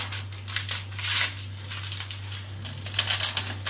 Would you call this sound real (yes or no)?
yes